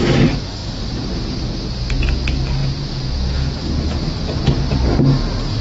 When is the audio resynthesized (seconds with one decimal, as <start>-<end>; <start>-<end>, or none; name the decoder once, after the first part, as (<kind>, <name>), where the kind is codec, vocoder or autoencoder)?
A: 2.6-3.6 (vocoder, Vocos)